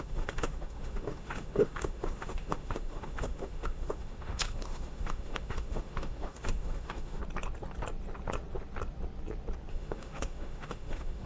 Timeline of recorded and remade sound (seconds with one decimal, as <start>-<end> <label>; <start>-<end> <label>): 0.0-7.2 remade; 7.2-9.7 recorded; 9.7-11.3 remade